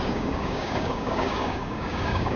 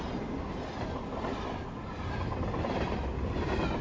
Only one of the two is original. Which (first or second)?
second